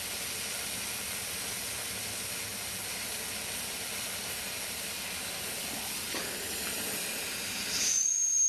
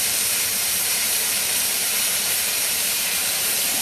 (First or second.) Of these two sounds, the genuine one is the first